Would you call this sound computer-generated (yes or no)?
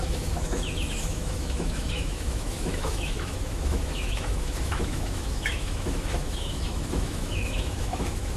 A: yes